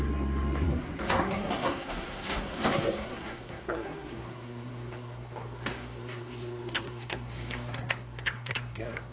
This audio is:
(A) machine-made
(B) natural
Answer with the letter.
A